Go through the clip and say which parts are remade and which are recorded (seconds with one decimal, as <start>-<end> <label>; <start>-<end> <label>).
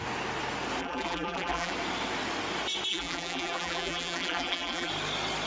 0.0-0.8 recorded; 0.8-1.7 remade; 1.7-2.9 recorded; 2.9-4.9 remade; 4.9-5.5 recorded